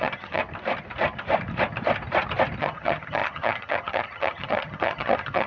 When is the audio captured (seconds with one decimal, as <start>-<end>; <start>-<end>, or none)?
0.4-2.6